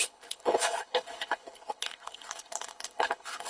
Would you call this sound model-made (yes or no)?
yes